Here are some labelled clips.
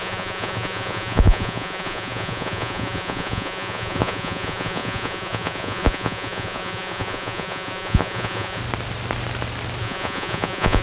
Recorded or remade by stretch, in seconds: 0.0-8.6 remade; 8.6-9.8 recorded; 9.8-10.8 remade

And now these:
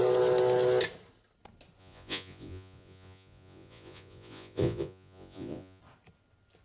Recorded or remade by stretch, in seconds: 0.0-1.8 recorded; 1.8-5.8 remade; 5.8-6.6 recorded

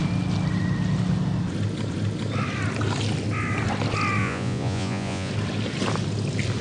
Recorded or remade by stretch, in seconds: 0.0-4.2 recorded; 4.2-5.3 remade; 5.3-6.6 recorded

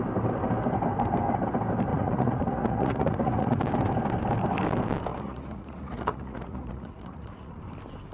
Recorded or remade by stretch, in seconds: 0.0-1.9 recorded; 1.9-3.6 remade; 3.6-5.1 recorded; 5.1-7.6 remade; 7.6-8.1 recorded

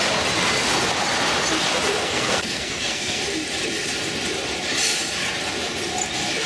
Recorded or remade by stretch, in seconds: 0.0-2.0 recorded; 2.0-3.2 remade; 3.2-6.5 recorded

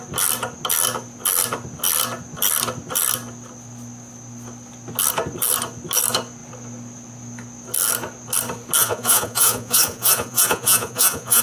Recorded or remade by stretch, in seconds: 0.0-8.8 recorded; 8.8-11.4 remade